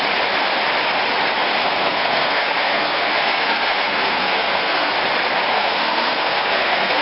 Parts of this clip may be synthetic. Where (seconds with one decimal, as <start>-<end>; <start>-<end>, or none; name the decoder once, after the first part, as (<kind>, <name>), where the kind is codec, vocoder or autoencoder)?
1.6-4.9 (codec, SNAC); 5.5-7.0